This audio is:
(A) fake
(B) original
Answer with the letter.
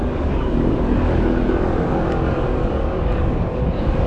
A